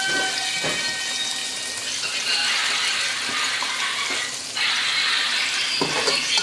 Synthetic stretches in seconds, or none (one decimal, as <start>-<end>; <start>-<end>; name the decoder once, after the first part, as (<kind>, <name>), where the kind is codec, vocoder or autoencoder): none